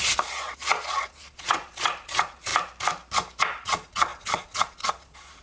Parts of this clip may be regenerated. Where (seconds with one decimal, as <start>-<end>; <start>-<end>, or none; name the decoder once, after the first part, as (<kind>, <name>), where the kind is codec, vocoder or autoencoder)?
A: 0.0-2.5 (vocoder, Vocos); 3.4-5.4